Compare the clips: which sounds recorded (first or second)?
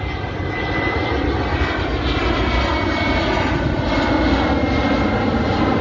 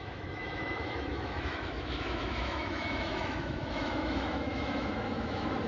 first